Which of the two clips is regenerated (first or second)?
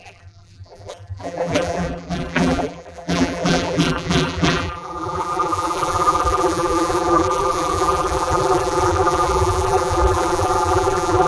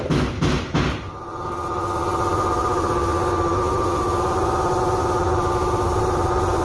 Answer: first